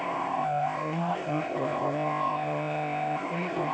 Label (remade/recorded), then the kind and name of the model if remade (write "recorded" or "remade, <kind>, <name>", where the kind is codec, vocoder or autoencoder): remade, codec, ZipCodec